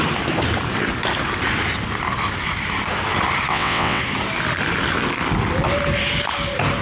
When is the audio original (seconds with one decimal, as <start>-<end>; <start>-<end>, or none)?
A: 0.0-3.5; 4.0-6.8